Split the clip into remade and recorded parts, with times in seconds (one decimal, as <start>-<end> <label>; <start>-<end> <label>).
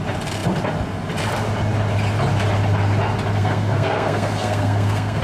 0.0-3.3 recorded; 3.3-5.2 remade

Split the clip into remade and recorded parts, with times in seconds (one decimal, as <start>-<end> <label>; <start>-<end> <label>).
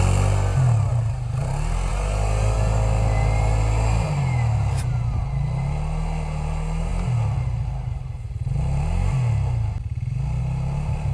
0.0-11.1 recorded